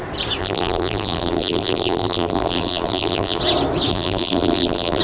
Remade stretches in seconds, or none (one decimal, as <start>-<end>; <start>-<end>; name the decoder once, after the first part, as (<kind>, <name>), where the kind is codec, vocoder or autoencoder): 0.4-3.4 (vocoder, BigVGAN v2); 3.9-5.0